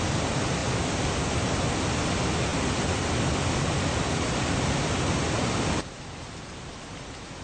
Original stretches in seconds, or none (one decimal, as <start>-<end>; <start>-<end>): 0.0-7.4